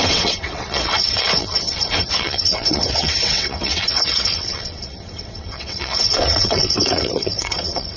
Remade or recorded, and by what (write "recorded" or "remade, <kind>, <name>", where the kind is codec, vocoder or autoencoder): remade, vocoder, WaveNeXt